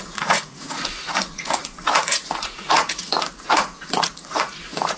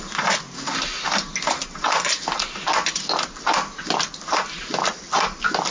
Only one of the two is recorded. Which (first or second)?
second